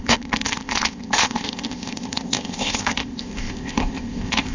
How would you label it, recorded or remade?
remade